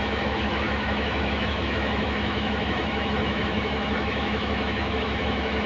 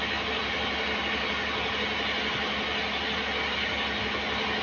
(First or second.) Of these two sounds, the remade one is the first